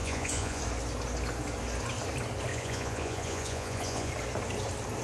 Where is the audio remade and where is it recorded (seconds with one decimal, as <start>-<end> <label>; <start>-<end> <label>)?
0.0-0.6 remade; 0.6-2.5 recorded; 2.5-4.1 remade; 4.1-5.0 recorded

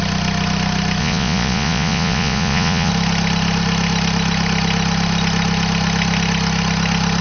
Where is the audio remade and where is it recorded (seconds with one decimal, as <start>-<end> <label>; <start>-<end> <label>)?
0.0-1.0 recorded; 1.0-2.9 remade; 2.9-7.2 recorded